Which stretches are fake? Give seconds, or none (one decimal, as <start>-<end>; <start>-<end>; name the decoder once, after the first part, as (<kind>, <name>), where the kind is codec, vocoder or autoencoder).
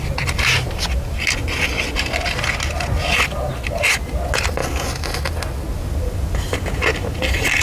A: none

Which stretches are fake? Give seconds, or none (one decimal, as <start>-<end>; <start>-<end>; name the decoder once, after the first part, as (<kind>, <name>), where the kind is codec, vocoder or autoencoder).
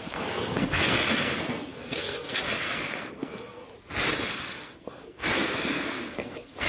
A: 0.0-3.6 (codec, SNAC); 4.3-6.7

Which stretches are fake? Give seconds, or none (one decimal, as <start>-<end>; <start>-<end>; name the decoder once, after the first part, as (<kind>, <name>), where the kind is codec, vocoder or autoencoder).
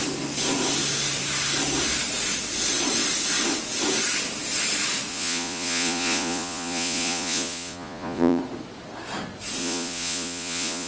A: 5.1-8.4 (vocoder, Vocos); 9.6-10.9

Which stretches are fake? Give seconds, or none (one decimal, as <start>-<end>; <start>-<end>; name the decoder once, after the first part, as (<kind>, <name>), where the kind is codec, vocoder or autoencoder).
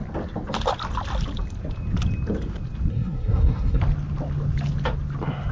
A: 2.9-3.8 (codec, SNAC)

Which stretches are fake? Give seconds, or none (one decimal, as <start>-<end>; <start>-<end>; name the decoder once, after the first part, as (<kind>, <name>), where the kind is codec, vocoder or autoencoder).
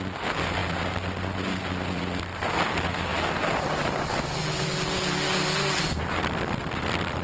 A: none